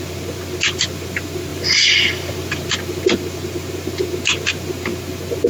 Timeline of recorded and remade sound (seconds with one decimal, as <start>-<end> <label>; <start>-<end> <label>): 0.0-1.5 remade; 1.5-3.1 recorded; 3.1-4.9 remade; 4.9-5.5 recorded